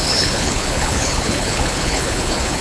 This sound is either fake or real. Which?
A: fake